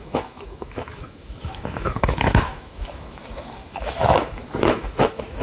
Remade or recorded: remade